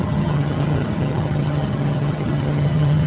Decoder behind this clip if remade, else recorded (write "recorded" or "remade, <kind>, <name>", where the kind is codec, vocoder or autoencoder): remade, vocoder, HiFi-GAN